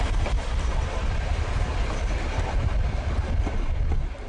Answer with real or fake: real